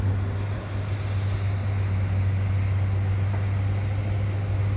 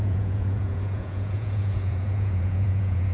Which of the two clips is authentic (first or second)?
first